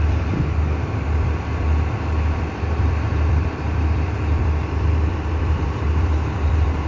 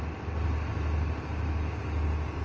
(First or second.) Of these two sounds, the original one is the second